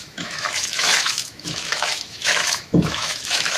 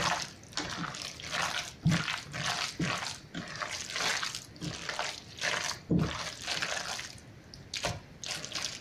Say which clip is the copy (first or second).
first